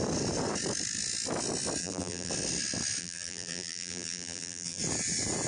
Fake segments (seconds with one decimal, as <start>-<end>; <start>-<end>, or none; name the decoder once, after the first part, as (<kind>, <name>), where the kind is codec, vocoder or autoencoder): 1.8-2.3 (vocoder, BigVGAN v2); 3.0-4.8